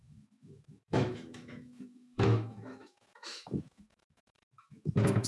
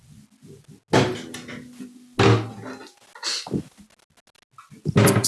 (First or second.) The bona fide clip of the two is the second